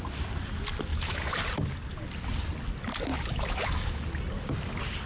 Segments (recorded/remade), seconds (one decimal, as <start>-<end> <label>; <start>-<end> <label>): 0.0-0.9 recorded; 0.9-1.4 remade; 1.4-3.1 recorded; 3.1-4.0 remade; 4.0-5.1 recorded